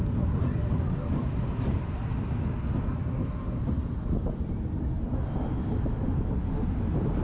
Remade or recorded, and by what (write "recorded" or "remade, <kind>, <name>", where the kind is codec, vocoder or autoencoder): recorded